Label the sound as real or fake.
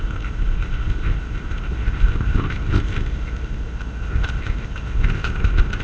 fake